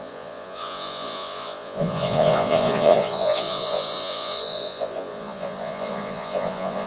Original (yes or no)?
no